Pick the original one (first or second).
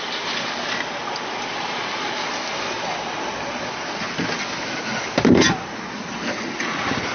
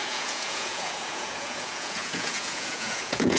first